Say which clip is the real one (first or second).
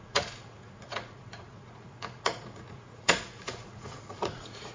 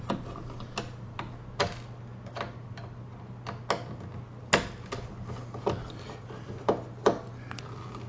second